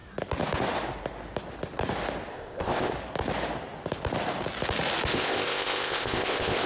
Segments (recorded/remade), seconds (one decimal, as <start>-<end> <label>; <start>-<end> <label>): 0.0-2.3 recorded; 2.3-2.9 remade; 2.9-5.1 recorded; 5.1-6.7 remade